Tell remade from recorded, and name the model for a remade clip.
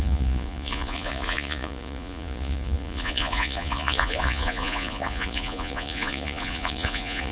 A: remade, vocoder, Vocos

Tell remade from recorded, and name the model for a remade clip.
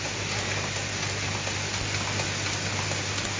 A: recorded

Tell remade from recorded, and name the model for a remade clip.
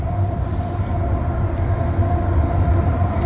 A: recorded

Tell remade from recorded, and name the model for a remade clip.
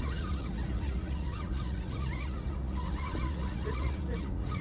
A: remade, vocoder, Vocos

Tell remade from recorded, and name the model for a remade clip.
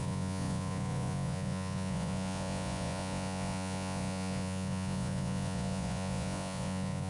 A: remade, vocoder, Vocos